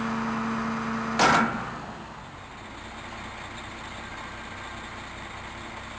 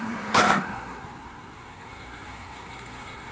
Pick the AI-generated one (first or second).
second